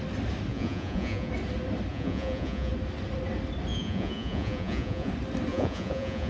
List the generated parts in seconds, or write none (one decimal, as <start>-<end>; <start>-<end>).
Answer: 0.5-1.3; 1.9-2.7; 3.7-5.1; 5.5-6.3